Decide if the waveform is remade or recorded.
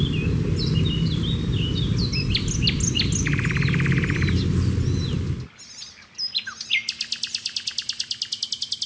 recorded